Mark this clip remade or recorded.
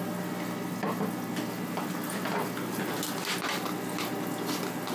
recorded